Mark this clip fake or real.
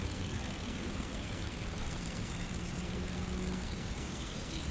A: fake